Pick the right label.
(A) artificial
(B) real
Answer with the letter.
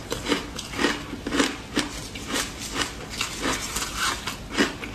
B